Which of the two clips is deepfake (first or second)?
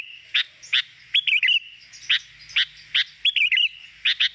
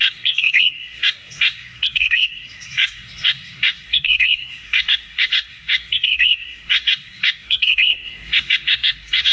second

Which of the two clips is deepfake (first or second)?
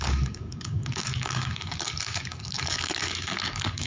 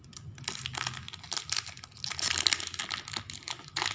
first